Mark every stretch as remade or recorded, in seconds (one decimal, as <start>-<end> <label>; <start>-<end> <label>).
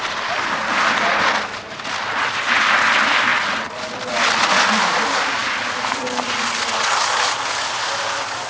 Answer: 0.0-8.5 recorded